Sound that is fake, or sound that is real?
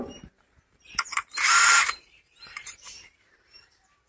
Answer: fake